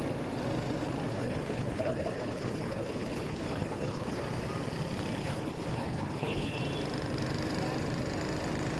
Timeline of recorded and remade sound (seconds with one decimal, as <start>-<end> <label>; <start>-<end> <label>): 0.0-1.1 recorded; 1.1-4.2 remade; 4.2-5.2 recorded; 5.2-6.6 remade; 6.6-8.8 recorded